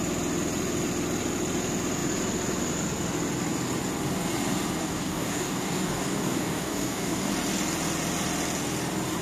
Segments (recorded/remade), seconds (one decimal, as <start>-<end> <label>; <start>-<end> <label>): 0.0-4.8 recorded; 4.8-7.3 remade; 7.3-9.2 recorded

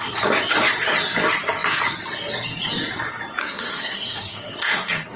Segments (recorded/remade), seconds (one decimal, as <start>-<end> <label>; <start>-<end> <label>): 0.0-3.4 recorded; 3.4-5.2 remade

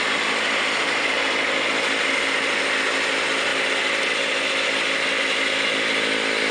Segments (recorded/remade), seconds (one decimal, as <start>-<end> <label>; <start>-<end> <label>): 0.0-6.5 recorded